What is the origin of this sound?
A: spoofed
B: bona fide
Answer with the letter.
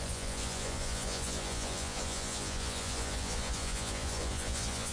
A